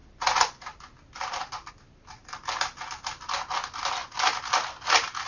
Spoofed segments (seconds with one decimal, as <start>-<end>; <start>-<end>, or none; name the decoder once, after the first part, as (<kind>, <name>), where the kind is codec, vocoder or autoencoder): none